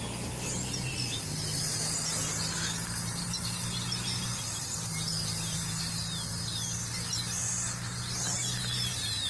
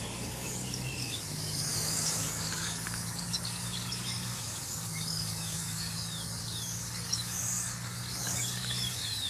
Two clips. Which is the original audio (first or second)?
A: first